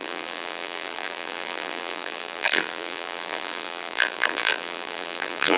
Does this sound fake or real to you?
fake